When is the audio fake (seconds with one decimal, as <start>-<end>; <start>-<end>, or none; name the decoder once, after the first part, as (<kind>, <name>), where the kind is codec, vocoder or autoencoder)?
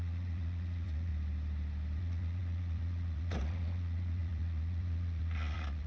0.0-1.1 (vocoder, Vocos); 2.0-5.9